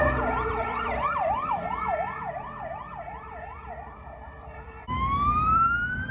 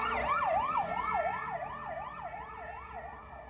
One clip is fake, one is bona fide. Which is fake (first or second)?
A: first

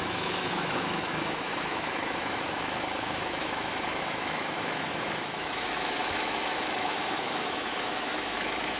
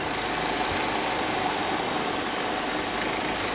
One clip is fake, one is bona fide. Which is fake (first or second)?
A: first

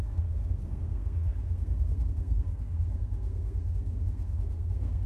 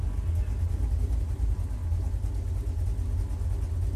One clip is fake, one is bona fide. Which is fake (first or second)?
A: first